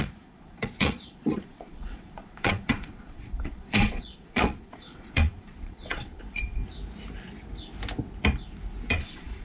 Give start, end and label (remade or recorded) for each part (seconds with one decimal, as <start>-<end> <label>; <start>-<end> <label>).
0.0-6.6 remade; 6.6-8.9 recorded; 8.9-9.4 remade